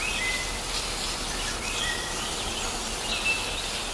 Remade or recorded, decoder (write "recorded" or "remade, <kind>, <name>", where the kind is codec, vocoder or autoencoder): recorded